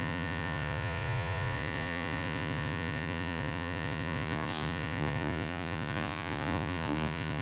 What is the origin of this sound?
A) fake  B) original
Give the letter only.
A